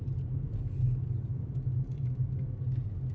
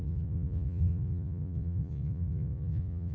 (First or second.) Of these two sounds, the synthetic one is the second